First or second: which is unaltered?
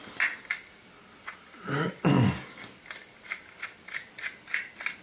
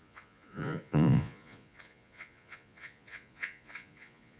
first